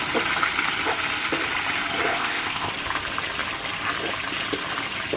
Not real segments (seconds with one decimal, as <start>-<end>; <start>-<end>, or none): 2.1-2.7